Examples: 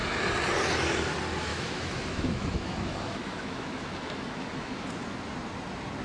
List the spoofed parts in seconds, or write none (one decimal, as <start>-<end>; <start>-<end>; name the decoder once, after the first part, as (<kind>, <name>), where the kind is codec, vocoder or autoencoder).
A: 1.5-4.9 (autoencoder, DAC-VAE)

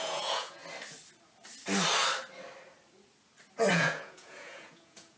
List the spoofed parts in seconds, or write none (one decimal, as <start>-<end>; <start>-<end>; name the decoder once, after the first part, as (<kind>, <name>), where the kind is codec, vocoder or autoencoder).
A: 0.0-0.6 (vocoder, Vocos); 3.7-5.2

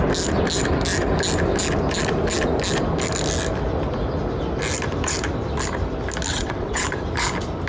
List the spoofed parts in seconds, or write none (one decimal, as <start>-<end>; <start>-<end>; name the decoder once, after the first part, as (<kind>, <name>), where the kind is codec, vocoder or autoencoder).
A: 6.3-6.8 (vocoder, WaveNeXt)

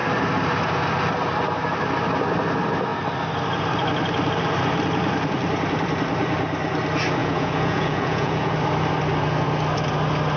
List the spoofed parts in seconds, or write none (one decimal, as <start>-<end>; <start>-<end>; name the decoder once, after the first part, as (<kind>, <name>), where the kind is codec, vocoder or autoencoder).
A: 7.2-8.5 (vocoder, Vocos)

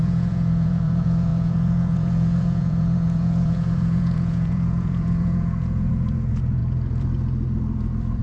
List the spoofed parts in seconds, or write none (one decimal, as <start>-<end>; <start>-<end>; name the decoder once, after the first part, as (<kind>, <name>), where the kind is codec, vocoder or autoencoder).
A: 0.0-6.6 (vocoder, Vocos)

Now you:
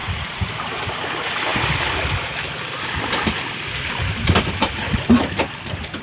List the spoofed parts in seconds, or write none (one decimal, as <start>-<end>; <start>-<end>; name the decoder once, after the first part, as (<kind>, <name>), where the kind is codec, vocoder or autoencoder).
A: 0.0-0.5 (vocoder, Vocos)

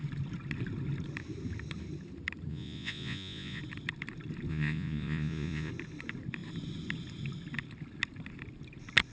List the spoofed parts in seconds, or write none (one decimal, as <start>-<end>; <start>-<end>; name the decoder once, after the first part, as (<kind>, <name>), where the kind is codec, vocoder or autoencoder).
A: 2.5-3.6 (vocoder, Vocos); 4.5-5.7